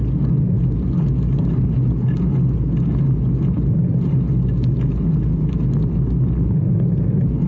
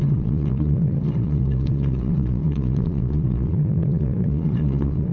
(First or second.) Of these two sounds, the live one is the first